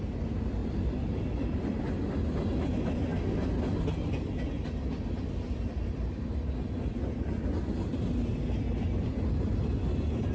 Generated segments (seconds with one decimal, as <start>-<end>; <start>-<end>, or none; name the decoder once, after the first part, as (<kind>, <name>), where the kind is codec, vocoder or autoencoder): 0.6-1.7 (vocoder, BigVGAN v2)